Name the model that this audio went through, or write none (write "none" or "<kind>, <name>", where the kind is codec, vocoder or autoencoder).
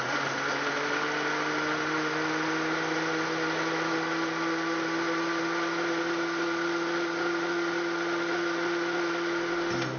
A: none